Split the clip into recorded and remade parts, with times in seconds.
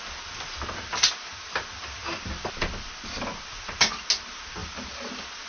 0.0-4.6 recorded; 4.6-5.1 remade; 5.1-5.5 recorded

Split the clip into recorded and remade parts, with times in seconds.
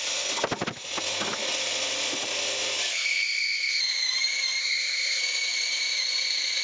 0.0-2.9 recorded; 2.9-3.8 remade; 3.8-4.6 recorded; 4.6-5.2 remade; 5.2-6.6 recorded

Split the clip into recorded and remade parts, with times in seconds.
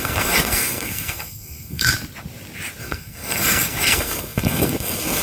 0.0-1.9 remade; 1.9-2.8 recorded; 2.8-5.2 remade